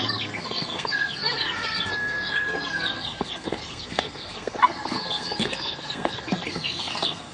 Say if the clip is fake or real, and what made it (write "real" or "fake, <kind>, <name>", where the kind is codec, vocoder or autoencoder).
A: fake, codec, SNAC